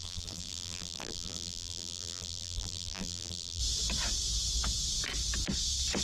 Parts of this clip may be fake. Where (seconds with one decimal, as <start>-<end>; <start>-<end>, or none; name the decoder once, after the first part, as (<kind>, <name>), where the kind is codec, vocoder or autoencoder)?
0.0-3.6 (vocoder, BigVGAN v2)